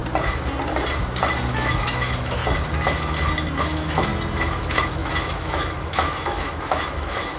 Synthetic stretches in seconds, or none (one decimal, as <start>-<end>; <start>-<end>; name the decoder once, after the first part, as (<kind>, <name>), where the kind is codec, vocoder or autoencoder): 1.5-2.4 (autoencoder, DAC-VAE); 3.6-4.1; 4.6-7.4